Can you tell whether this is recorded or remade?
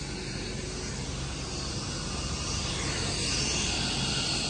recorded